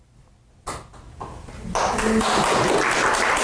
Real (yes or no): yes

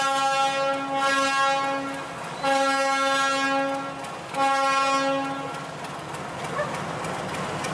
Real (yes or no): yes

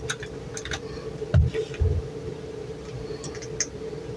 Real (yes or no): yes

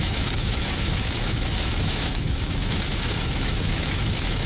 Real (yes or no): no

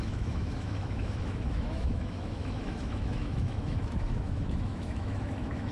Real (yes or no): no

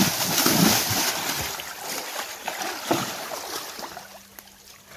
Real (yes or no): yes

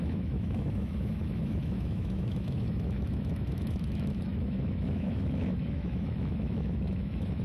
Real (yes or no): no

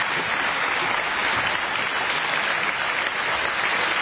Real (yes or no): yes